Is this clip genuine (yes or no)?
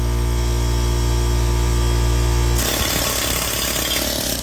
yes